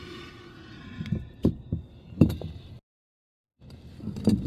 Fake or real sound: real